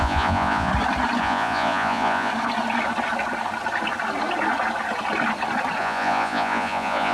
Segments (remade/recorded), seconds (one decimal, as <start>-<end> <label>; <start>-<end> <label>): 0.0-0.7 remade; 0.7-1.2 recorded; 1.2-2.3 remade; 2.3-5.8 recorded; 5.8-7.1 remade